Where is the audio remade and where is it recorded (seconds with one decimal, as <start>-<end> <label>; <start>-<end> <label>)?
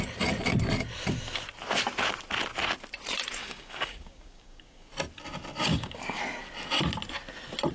0.0-3.4 recorded; 3.4-4.9 remade; 4.9-5.7 recorded; 5.7-6.2 remade; 6.2-7.7 recorded